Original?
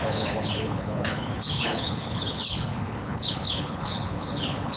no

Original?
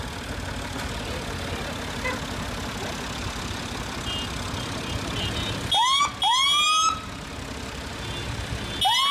yes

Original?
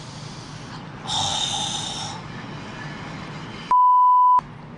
yes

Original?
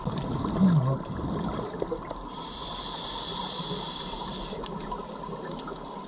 yes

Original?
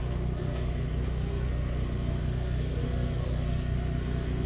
no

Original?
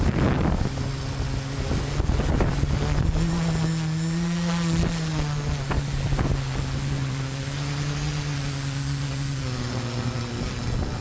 yes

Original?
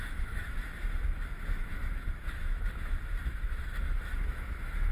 no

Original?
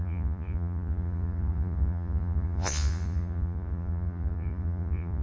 no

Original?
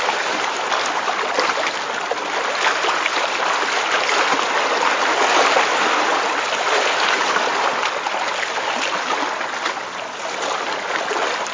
yes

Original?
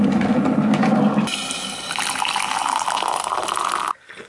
yes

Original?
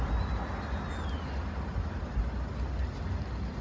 yes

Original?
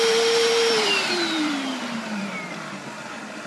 no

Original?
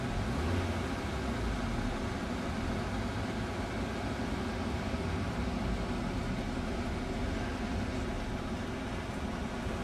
yes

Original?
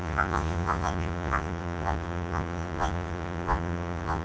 no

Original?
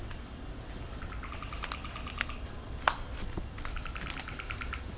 yes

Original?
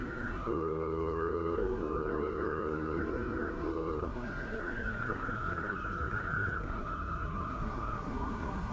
no